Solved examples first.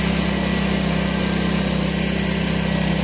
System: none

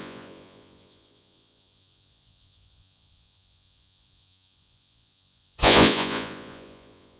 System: vocoder, Vocos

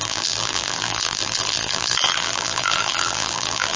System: vocoder, BigVGAN v2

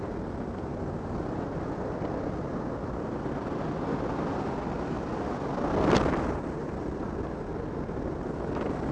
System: none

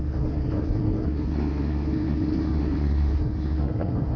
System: codec, SNAC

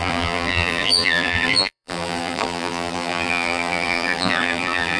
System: vocoder, BigVGAN v2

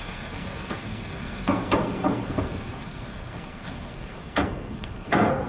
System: codec, SNAC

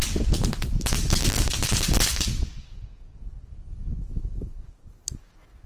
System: codec, DAC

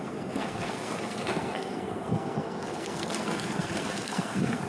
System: codec, SNAC